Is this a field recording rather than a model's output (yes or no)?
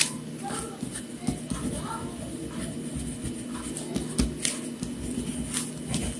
yes